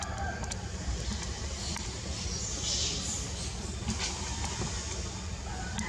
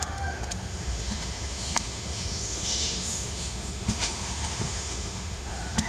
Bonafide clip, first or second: first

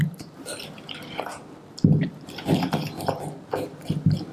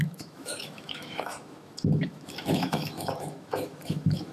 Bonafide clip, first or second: first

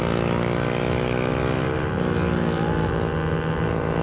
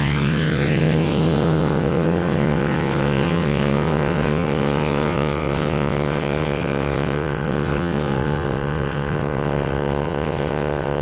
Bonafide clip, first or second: first